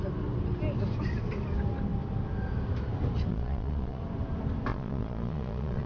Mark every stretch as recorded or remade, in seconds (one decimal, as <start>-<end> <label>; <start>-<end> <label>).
0.0-3.3 recorded; 3.3-4.0 remade; 4.0-4.7 recorded; 4.7-5.9 remade